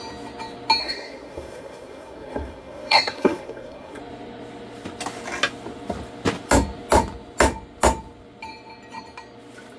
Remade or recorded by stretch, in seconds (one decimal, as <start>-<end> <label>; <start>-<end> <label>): 0.0-0.8 recorded; 0.8-4.0 remade; 4.0-9.8 recorded